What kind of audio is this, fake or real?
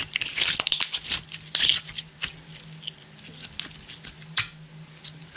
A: real